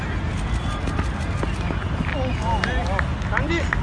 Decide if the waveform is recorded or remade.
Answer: recorded